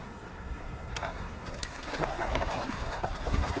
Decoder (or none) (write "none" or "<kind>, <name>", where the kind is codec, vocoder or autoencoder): codec, SNAC